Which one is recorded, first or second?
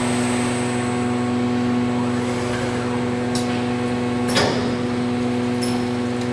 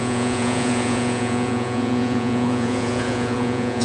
first